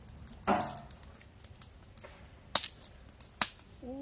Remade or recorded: recorded